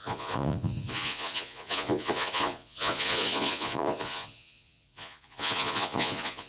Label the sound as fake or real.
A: fake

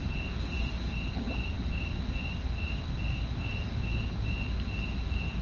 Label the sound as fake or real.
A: real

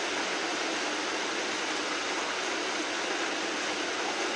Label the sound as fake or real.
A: real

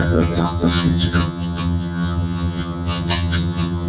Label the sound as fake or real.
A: fake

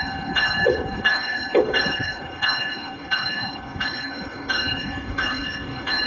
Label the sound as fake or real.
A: fake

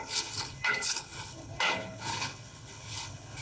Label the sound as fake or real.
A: fake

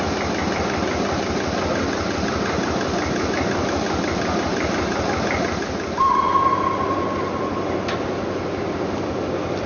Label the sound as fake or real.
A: real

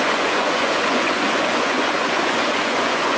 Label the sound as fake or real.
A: fake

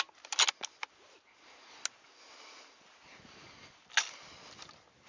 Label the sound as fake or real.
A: real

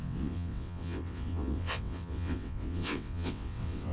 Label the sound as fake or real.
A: fake